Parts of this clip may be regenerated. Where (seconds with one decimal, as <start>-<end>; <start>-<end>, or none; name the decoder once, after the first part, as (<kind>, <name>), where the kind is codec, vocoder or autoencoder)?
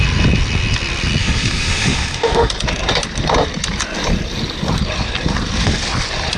1.2-2.5 (autoencoder, DAC-VAE)